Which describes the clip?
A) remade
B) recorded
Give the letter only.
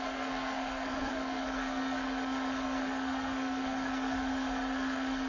A